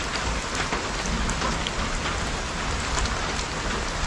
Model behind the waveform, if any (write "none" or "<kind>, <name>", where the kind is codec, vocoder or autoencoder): none